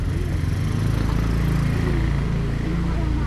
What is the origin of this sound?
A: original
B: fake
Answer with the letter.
A